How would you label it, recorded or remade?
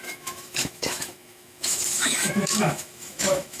remade